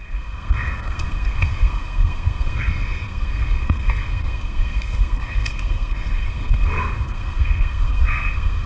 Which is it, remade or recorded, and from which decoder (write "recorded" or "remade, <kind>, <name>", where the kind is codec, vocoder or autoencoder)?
remade, codec, SNAC